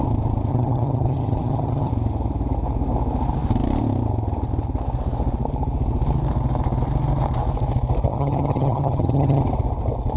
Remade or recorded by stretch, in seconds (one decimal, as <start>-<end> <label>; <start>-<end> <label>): 0.0-0.5 recorded; 0.5-1.9 remade; 1.9-8.1 recorded; 8.1-9.4 remade; 9.4-10.2 recorded